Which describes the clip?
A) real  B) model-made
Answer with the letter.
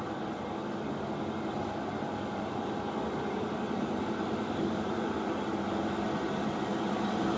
A